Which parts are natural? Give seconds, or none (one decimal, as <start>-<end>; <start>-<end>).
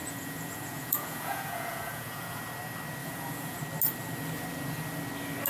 2.4-3.0; 3.6-5.5